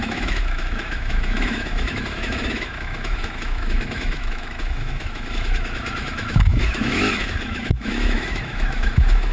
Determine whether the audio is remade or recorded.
remade